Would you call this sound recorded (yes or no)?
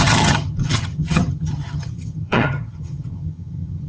no